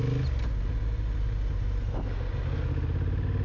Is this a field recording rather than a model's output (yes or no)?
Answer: yes